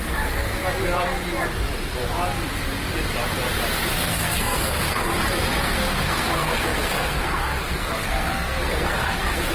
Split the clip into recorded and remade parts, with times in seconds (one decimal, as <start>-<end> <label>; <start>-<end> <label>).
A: 0.0-0.6 remade; 0.6-4.0 recorded; 4.0-5.1 remade; 5.1-5.6 recorded; 5.6-9.5 remade